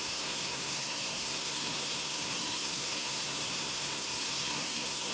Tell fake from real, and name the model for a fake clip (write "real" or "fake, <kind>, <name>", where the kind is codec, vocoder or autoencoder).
fake, codec, SNAC